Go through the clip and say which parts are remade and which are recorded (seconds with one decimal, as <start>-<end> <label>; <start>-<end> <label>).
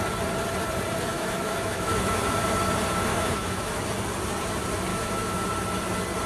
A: 0.0-1.1 recorded; 1.1-2.2 remade; 2.2-3.1 recorded; 3.1-3.8 remade; 3.8-4.9 recorded; 4.9-5.5 remade; 5.5-6.3 recorded